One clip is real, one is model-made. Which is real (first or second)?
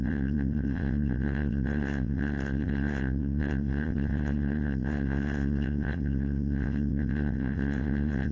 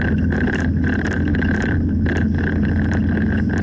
second